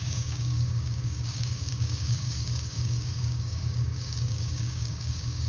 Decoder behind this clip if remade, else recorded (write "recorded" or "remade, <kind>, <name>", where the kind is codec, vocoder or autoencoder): remade, codec, DAC